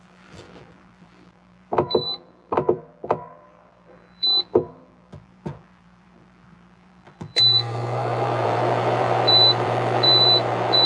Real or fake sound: fake